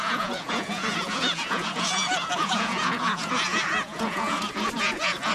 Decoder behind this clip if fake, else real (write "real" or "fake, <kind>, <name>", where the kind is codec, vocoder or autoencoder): fake, vocoder, Vocos